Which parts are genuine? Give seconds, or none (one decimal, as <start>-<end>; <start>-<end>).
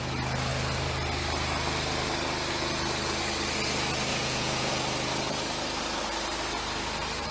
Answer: 0.0-4.1; 4.7-7.3